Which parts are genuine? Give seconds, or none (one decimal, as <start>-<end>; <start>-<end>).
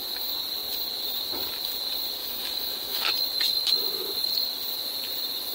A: 0.0-2.2; 3.1-5.5